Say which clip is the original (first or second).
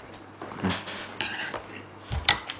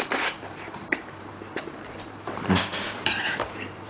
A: first